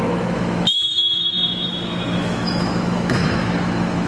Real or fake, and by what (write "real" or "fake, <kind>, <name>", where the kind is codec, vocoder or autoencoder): fake, autoencoder, DAC-VAE